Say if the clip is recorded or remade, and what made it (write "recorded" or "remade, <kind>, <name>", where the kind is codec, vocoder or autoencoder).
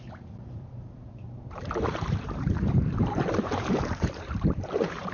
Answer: remade, vocoder, BigVGAN v2